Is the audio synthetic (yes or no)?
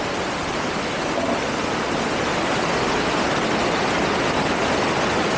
no